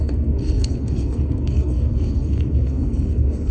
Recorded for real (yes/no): no